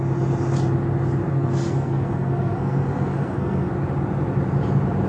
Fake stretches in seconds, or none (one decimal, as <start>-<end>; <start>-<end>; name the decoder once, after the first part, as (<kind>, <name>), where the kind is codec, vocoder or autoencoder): 1.3-3.7 (codec, SNAC)